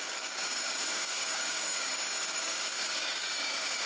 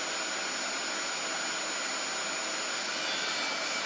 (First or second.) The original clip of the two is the second